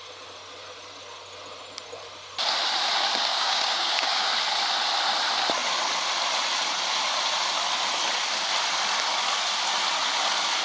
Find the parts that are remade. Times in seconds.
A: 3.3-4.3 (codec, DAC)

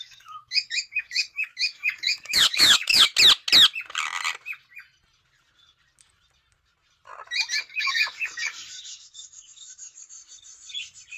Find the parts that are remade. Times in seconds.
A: 0.0-3.1 (codec, DAC); 7.6-10.2

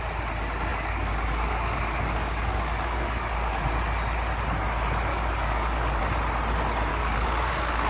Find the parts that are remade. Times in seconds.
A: 0.7-3.6 (codec, DAC); 5.1-6.0; 6.9-7.9